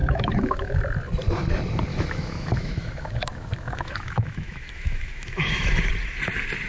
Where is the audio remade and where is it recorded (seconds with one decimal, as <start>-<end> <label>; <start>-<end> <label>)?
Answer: 0.0-0.8 remade; 0.8-1.9 recorded; 1.9-5.9 remade; 5.9-6.7 recorded